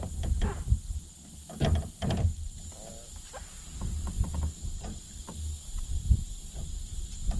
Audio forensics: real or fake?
real